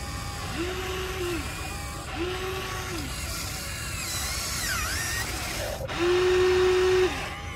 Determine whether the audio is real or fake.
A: real